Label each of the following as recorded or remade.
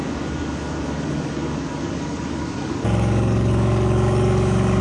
remade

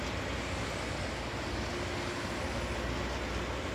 recorded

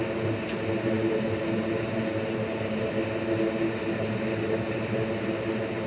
recorded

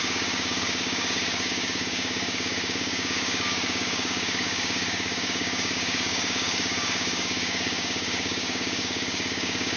remade